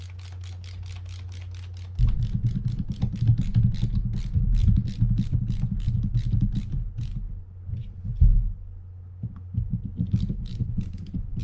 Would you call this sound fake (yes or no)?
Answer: no